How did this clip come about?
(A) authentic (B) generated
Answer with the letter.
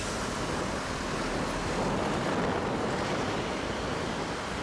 A